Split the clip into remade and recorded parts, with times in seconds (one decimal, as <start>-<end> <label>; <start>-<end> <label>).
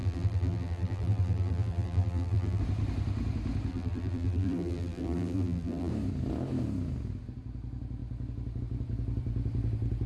0.0-2.6 remade; 2.6-3.7 recorded; 3.7-5.9 remade; 5.9-10.1 recorded